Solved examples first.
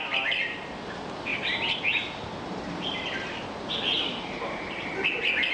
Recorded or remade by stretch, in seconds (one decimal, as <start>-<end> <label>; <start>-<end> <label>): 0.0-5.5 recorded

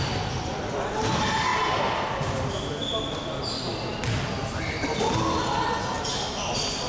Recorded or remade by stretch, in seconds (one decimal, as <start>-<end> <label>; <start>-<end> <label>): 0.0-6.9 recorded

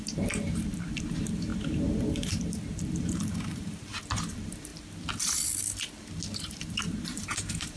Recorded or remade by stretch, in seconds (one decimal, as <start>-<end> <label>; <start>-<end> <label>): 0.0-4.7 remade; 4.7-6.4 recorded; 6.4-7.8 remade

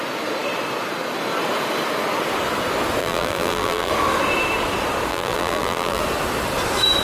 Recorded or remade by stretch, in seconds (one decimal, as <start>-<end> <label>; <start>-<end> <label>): 0.0-3.0 recorded; 3.0-3.9 remade; 3.9-5.1 recorded; 5.1-6.0 remade; 6.0-7.0 recorded

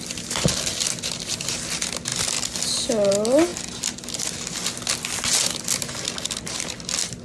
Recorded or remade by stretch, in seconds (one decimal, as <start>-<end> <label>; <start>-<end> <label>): 0.0-7.2 recorded

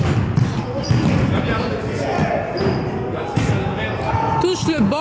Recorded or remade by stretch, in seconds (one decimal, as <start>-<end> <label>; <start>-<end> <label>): 0.0-5.0 recorded

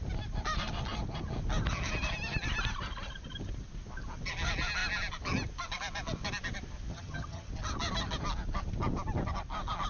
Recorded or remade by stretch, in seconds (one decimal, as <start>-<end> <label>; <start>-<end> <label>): 0.0-6.9 recorded; 6.9-7.5 remade; 7.5-9.9 recorded

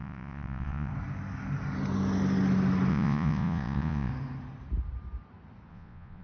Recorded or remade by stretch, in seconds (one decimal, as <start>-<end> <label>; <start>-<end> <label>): 0.0-0.9 remade; 0.9-2.9 recorded; 2.9-4.1 remade; 4.1-5.7 recorded; 5.7-6.2 remade